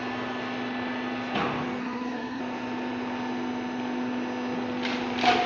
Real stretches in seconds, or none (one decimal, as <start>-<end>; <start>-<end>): 0.0-1.8; 2.4-5.5